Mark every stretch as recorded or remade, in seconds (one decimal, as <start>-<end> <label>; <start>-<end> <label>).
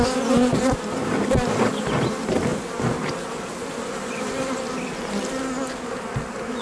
0.0-6.6 recorded